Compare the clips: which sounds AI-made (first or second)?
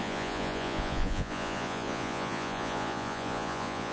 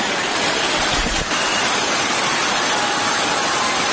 first